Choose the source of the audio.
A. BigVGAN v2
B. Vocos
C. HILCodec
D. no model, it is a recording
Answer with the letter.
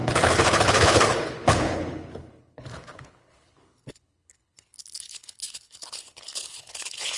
C